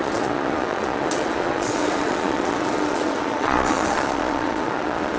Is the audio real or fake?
fake